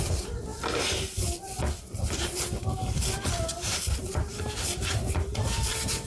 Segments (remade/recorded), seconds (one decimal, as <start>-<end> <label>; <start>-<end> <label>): 0.0-0.5 recorded; 0.5-2.4 remade; 2.4-4.0 recorded; 4.0-6.1 remade